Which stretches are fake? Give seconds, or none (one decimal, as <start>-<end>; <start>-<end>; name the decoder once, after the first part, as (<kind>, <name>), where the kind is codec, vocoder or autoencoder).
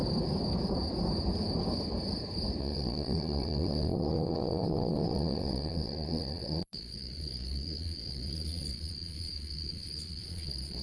2.6-10.8 (vocoder, Vocos)